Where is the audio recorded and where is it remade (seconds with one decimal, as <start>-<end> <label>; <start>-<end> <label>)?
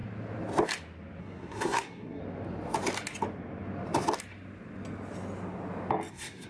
0.0-1.2 recorded; 1.2-2.2 remade; 2.2-6.1 recorded; 6.1-6.5 remade